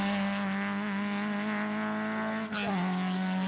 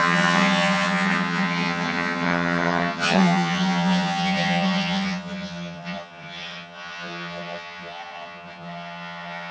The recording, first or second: first